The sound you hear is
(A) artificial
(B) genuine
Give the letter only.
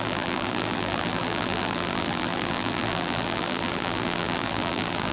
A